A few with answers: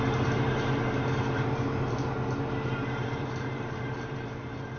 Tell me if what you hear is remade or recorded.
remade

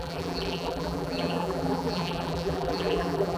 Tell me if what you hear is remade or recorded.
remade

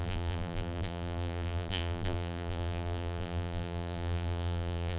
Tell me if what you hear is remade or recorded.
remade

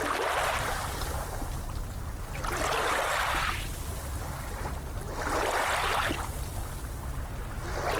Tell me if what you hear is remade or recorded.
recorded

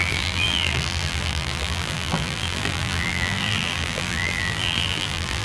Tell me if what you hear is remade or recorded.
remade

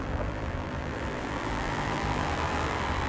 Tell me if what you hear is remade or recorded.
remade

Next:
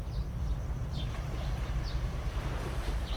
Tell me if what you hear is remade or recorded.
remade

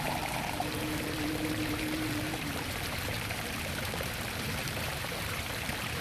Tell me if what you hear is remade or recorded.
remade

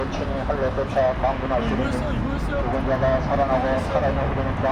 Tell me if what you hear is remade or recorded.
recorded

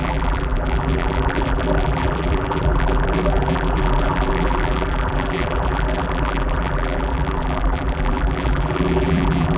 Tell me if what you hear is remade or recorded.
remade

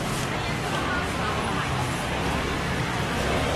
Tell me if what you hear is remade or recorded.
recorded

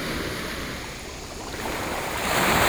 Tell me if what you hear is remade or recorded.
recorded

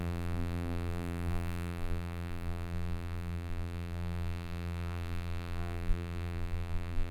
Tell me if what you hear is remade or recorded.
remade